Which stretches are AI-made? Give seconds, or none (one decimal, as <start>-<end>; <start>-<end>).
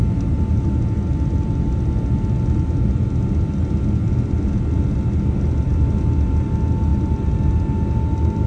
none